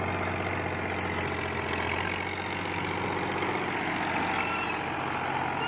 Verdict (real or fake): real